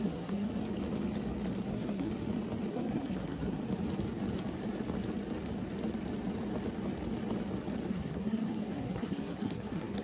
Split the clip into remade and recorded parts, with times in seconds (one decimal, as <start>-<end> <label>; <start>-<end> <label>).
0.0-0.6 remade; 0.6-1.7 recorded; 1.7-2.1 remade; 2.1-2.7 recorded; 2.7-3.6 remade; 3.6-7.9 recorded; 7.9-10.0 remade